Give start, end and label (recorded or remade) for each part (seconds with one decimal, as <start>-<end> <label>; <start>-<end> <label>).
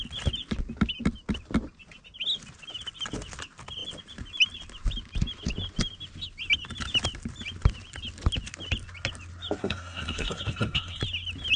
0.0-9.6 recorded; 9.6-11.0 remade; 11.0-11.6 recorded